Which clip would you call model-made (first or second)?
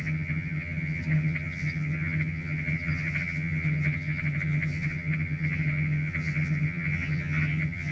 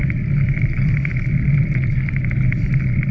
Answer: first